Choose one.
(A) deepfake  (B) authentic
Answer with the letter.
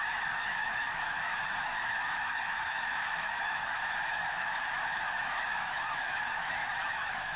A